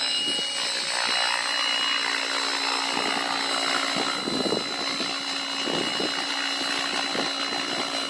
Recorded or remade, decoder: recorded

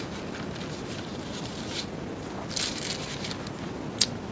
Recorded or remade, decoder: recorded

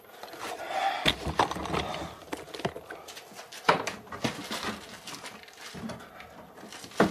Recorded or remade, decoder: recorded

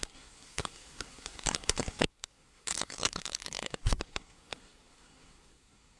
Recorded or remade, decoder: remade, codec, SNAC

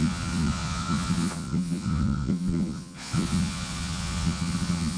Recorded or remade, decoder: remade, vocoder, Vocos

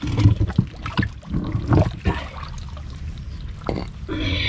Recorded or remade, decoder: recorded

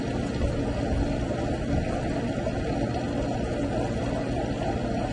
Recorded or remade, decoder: recorded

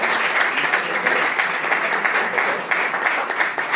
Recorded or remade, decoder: recorded